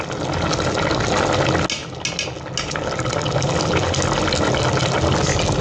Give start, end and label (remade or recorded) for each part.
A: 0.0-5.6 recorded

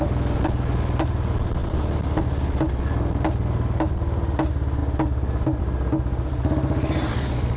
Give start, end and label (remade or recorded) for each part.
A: 0.0-7.6 recorded

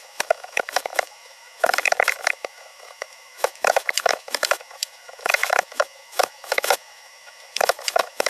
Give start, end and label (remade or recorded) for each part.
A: 0.0-8.3 remade

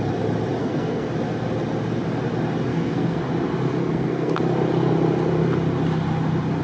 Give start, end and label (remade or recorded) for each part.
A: 0.0-0.6 recorded; 0.6-1.1 remade; 1.1-2.7 recorded; 2.7-3.2 remade; 3.2-3.8 recorded; 3.8-4.4 remade; 4.4-6.6 recorded

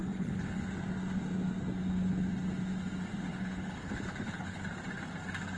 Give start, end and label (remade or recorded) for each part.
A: 0.0-0.7 remade; 0.7-3.3 recorded; 3.3-4.6 remade; 4.6-5.6 recorded